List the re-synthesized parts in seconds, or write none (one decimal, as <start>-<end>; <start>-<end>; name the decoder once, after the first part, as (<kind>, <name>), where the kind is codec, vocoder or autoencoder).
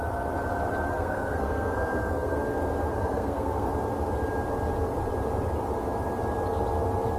0.9-2.4 (codec, SNAC); 2.9-3.7